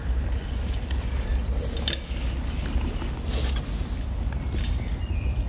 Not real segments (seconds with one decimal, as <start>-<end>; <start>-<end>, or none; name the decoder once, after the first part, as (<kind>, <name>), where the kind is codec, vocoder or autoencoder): none